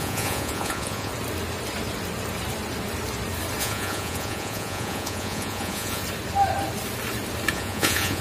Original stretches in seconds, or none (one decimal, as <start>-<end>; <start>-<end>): 1.1-3.6; 6.0-7.5